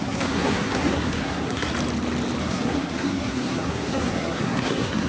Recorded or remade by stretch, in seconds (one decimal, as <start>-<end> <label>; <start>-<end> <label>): 0.0-1.7 remade; 1.7-2.4 recorded; 2.4-5.1 remade